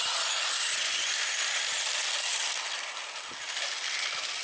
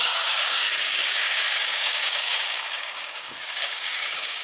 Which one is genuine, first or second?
first